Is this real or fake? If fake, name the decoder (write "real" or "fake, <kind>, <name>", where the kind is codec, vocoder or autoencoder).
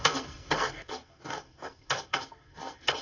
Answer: fake, codec, SNAC